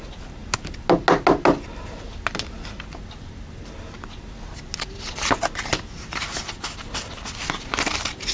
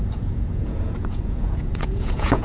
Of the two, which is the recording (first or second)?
first